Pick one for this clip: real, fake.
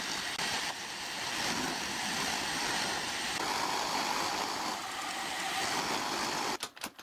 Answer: real